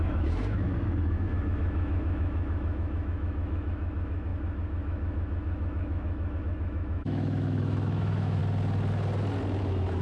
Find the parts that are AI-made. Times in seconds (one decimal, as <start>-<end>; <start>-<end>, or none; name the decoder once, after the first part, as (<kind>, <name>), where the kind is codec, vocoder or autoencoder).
0.0-8.4 (autoencoder, DAC-VAE); 9.6-10.0